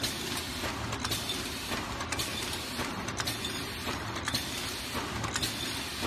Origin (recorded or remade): recorded